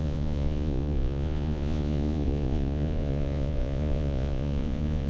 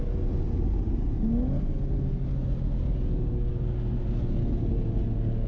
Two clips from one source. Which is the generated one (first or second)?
first